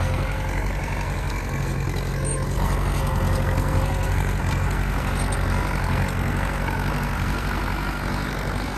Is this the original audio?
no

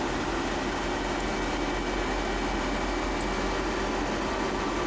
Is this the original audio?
yes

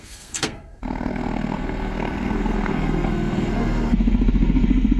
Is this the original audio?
no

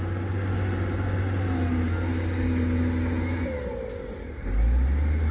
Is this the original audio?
yes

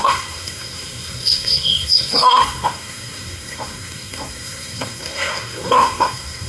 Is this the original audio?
no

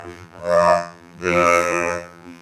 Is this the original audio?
no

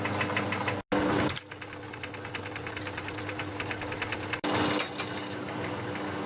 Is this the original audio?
yes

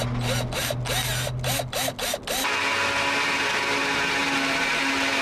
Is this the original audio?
yes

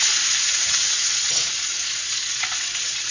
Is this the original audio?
no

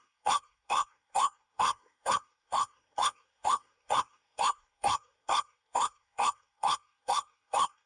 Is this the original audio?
no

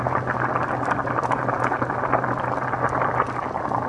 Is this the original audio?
yes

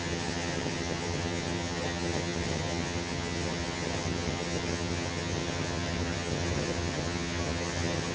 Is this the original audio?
no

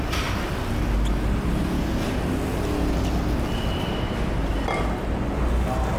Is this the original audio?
yes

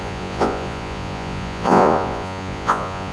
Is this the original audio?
no